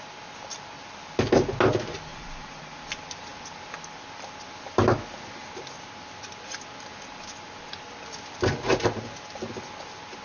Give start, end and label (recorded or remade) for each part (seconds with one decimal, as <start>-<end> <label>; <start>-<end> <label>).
0.0-2.1 recorded; 2.1-2.8 remade; 2.8-10.2 recorded